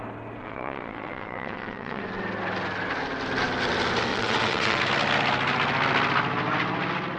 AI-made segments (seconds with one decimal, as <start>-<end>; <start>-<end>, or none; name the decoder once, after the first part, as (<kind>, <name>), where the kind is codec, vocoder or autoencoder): 0.4-2.0 (vocoder, WaveNeXt); 4.1-4.8